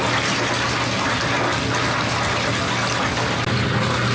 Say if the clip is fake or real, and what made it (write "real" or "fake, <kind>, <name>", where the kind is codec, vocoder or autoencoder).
real